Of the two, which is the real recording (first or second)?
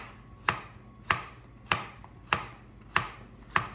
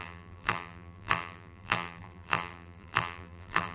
first